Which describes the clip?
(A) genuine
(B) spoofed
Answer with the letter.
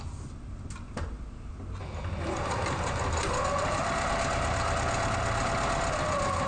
A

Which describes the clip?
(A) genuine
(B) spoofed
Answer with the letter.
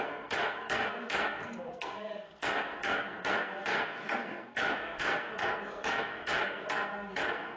B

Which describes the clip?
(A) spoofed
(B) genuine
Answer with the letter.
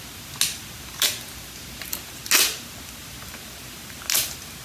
B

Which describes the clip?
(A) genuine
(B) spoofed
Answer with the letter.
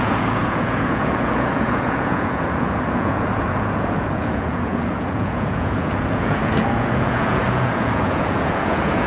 B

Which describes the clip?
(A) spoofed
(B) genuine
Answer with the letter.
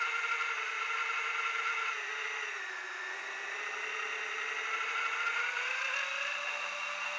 B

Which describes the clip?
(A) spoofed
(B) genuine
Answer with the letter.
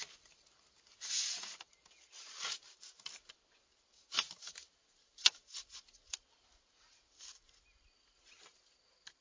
B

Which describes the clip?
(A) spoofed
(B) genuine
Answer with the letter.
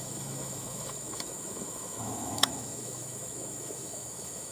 A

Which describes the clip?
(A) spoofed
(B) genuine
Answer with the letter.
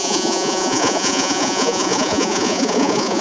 A